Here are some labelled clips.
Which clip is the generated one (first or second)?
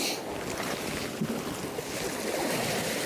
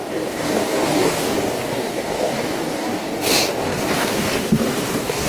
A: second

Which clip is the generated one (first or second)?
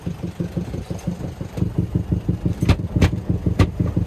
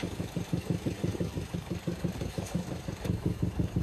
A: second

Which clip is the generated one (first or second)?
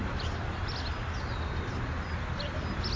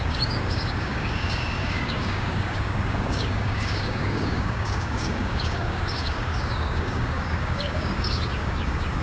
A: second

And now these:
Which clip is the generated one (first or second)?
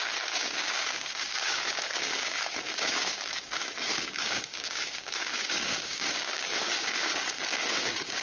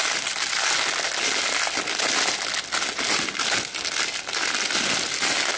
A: first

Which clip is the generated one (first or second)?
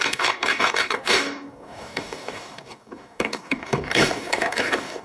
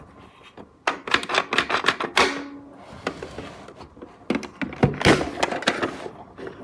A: first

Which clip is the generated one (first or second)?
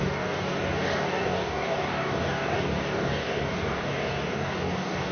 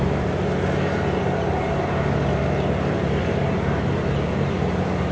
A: first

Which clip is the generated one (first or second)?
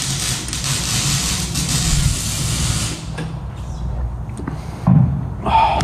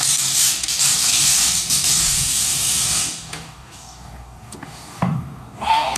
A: second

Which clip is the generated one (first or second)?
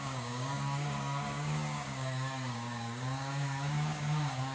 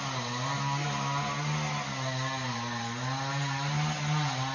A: first